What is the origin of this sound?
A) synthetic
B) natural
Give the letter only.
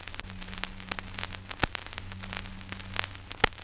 B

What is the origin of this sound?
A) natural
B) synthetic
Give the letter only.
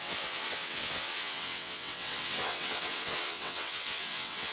B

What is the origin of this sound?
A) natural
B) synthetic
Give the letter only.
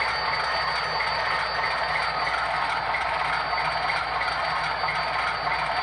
A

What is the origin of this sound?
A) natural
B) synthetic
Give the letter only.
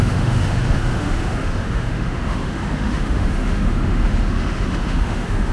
B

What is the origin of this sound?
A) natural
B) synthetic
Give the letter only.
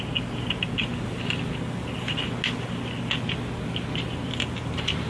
A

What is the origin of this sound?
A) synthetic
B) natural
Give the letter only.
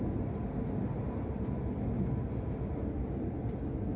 B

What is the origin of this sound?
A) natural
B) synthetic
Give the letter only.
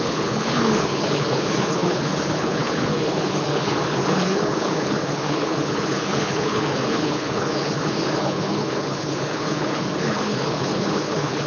B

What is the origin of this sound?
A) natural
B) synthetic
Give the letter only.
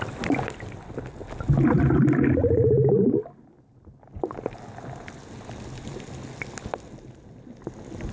A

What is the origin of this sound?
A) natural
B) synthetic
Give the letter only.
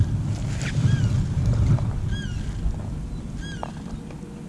A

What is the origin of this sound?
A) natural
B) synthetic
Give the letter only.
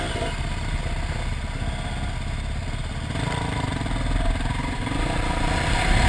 A